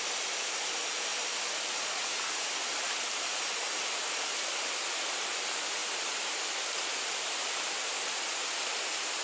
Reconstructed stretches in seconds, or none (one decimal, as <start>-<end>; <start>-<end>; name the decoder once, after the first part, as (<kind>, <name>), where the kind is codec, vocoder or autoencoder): none